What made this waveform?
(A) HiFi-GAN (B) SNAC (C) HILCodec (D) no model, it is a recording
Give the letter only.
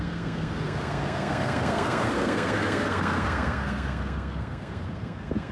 B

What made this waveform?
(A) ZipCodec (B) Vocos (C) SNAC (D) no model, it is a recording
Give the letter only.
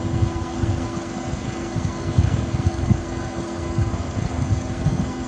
C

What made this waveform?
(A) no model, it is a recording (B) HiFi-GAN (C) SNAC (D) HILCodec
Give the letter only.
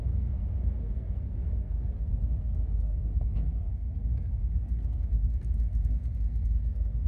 C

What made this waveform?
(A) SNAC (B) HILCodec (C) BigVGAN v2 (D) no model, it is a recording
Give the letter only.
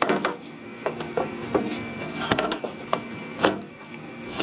A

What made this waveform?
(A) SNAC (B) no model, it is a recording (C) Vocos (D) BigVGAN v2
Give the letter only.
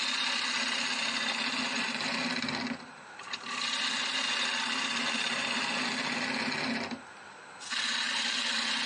B